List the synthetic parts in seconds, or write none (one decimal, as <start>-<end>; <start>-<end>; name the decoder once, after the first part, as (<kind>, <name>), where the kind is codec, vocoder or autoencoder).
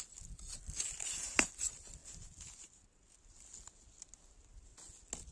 none